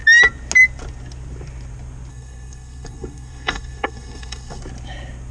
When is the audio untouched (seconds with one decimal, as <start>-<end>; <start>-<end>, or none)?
0.0-2.1; 4.6-5.3